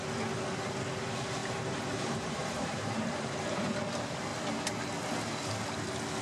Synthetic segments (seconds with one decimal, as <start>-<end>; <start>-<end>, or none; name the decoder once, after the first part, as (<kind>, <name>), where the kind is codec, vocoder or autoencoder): 1.4-3.6 (vocoder, BigVGAN v2)